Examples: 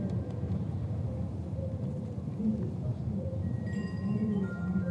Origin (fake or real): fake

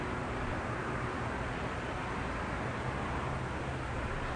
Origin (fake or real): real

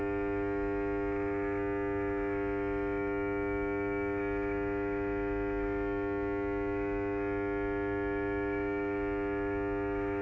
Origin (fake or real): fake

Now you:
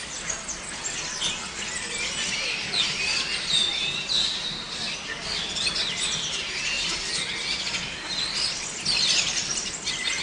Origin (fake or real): real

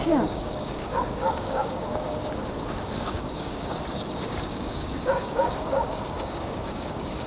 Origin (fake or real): fake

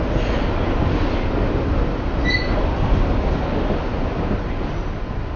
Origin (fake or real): real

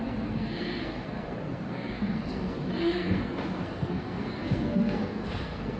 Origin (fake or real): fake